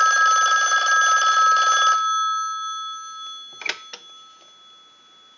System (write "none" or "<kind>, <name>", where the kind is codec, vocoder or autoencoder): none